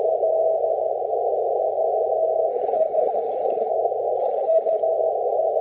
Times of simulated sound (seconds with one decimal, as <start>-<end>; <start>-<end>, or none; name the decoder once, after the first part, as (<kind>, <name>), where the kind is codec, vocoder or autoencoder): 2.5-3.7 (codec, HILCodec); 4.2-4.8